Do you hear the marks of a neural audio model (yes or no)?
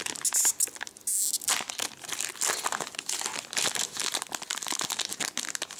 no